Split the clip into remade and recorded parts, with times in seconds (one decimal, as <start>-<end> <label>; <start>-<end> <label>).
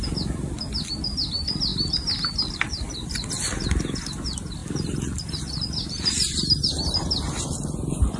0.0-8.2 recorded